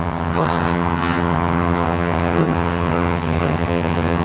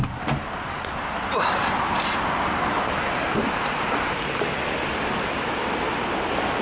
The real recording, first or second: second